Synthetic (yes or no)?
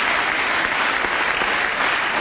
no